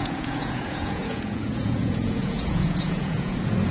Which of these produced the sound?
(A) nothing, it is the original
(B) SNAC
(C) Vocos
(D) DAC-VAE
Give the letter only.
C